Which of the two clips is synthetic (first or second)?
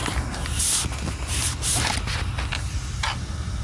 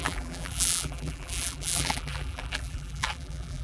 second